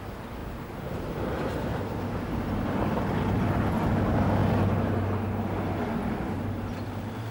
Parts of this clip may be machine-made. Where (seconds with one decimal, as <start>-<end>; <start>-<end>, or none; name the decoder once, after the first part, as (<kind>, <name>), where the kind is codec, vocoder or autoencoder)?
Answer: none